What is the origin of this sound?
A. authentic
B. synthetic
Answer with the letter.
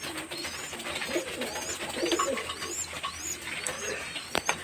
A